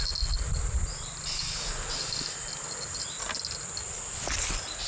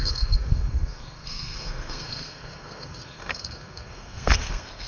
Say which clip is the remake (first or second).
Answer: second